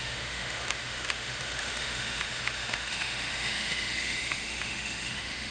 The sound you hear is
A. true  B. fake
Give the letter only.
B